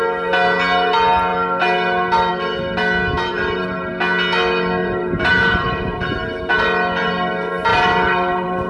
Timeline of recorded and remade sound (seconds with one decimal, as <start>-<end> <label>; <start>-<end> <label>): 0.0-3.3 recorded; 3.3-3.9 remade; 3.9-4.8 recorded; 4.8-6.4 remade; 6.4-7.7 recorded; 7.7-8.7 remade